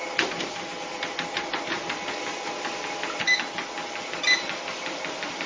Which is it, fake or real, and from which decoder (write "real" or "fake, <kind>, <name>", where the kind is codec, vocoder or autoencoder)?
real